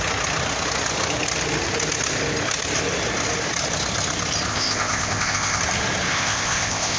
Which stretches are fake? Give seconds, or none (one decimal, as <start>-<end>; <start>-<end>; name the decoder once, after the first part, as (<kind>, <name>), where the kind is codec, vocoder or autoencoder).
4.5-5.6 (codec, ZipCodec); 6.1-7.0